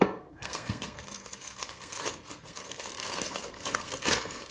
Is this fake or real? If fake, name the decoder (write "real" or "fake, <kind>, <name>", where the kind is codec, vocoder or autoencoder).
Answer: fake, codec, SNAC